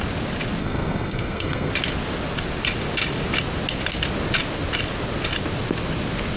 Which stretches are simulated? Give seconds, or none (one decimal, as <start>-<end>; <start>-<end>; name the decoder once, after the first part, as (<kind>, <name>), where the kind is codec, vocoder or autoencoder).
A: 0.6-1.7 (codec, SNAC)